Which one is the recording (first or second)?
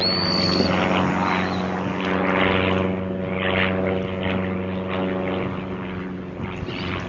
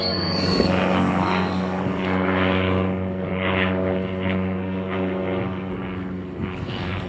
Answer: first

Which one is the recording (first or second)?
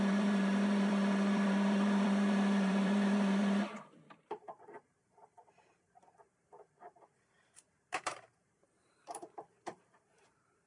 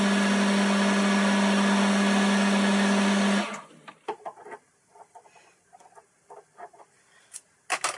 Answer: second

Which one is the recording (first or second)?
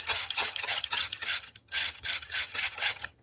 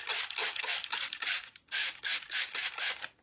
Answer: second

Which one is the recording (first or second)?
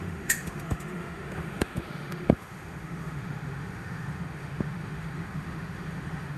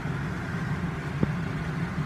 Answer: second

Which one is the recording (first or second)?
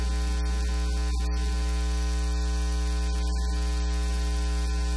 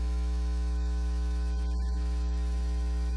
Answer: first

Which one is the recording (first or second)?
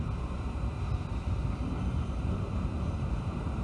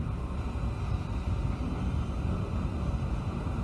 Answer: second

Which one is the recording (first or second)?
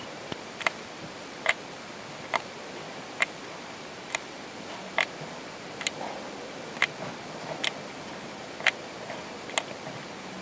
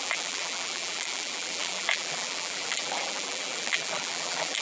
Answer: first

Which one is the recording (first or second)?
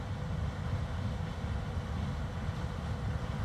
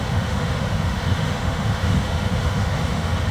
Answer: first